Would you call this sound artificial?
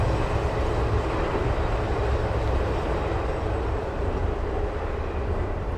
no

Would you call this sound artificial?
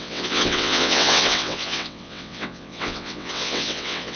yes